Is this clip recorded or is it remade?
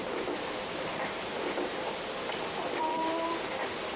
recorded